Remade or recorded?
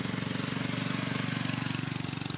recorded